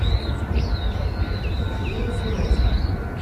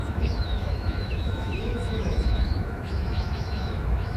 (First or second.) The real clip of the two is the first